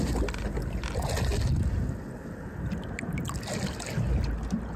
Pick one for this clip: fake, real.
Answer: real